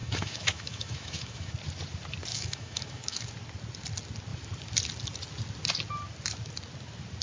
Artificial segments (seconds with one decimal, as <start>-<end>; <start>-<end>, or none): 0.0-1.5; 2.3-3.3